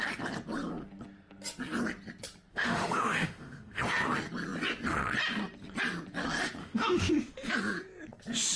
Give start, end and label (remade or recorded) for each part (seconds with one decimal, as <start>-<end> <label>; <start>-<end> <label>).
0.0-2.5 recorded; 2.5-3.8 remade; 3.8-6.6 recorded; 6.6-7.5 remade; 7.5-8.6 recorded